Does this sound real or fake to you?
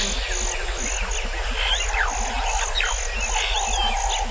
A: real